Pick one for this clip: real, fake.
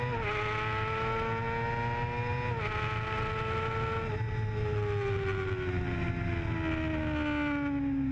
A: real